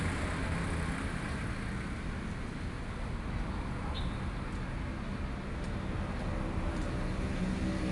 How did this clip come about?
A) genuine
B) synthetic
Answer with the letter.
A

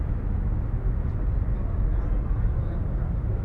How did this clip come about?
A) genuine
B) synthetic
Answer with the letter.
A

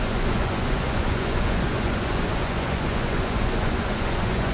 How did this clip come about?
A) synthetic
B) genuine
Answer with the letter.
A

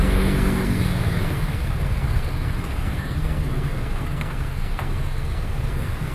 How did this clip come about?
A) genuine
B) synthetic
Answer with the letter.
B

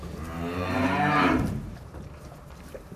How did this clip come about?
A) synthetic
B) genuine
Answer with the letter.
A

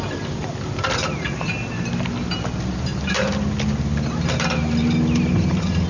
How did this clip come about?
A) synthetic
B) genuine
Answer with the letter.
B